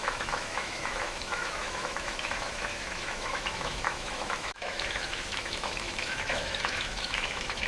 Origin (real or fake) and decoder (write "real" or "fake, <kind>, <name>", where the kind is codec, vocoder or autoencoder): fake, autoencoder, DAC-VAE